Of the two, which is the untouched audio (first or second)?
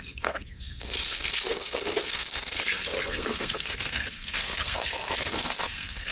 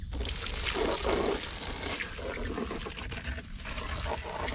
second